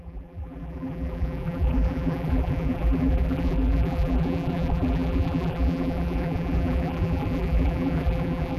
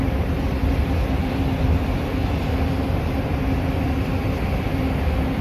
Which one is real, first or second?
second